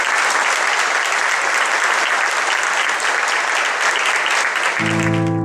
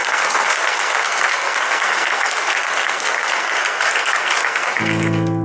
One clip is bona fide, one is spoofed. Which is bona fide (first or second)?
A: first